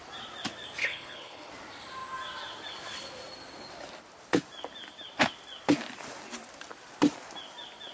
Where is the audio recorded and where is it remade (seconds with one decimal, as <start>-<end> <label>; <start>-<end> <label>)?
0.0-0.8 recorded; 0.8-1.5 remade; 1.5-7.9 recorded